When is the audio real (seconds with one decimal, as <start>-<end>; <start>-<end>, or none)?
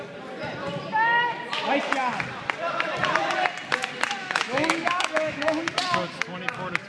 0.0-4.2; 5.6-6.9